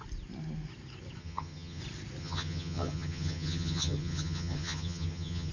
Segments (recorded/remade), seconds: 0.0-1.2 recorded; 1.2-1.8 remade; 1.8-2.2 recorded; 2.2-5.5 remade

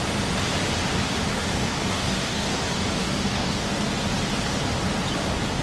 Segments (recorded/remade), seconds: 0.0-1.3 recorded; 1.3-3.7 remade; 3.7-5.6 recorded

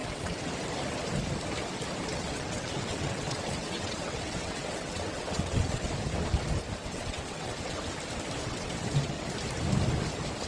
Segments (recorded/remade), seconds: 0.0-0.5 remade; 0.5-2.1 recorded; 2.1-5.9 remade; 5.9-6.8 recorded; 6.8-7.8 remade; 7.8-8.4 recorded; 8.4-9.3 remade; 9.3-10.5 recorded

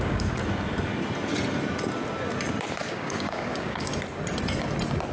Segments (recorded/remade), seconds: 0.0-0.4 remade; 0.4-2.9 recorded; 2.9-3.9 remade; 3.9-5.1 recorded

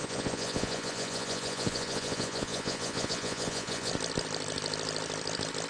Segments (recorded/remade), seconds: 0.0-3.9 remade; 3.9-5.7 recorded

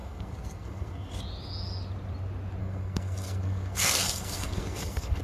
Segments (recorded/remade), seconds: 0.0-1.2 remade; 1.2-2.6 recorded; 2.6-5.2 remade